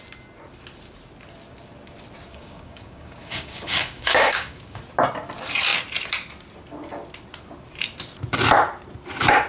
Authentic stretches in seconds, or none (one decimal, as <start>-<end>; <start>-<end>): 0.0-2.3; 4.8-9.5